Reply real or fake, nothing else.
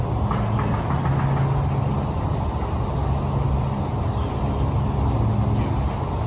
real